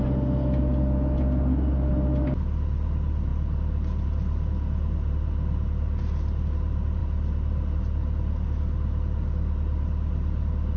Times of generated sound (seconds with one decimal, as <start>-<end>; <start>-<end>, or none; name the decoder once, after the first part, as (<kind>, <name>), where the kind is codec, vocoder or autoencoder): none